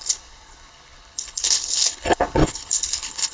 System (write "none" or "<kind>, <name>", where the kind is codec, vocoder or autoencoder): codec, HILCodec